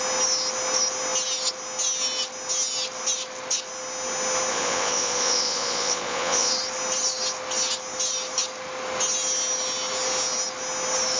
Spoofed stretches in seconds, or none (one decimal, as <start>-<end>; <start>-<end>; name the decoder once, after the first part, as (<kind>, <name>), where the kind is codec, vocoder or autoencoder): 4.5-6.5 (vocoder, Vocos)